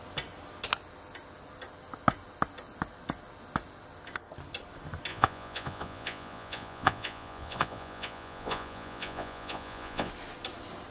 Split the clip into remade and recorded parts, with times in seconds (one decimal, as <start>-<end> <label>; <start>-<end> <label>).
0.0-5.1 recorded; 5.1-10.1 remade; 10.1-10.9 recorded